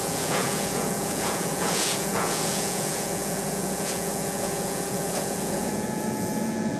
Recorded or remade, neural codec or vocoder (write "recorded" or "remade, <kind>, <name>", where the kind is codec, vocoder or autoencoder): remade, vocoder, Vocos